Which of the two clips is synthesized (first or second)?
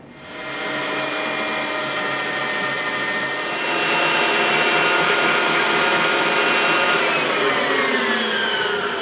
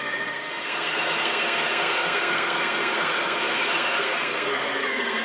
second